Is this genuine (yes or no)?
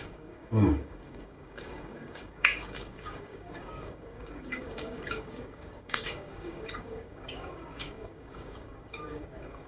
no